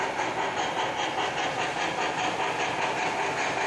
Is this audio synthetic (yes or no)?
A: no